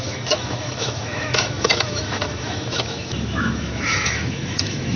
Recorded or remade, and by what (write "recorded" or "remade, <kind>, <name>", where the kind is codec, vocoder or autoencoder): remade, autoencoder, DAC-VAE